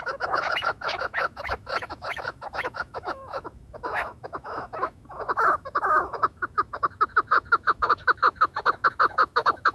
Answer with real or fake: fake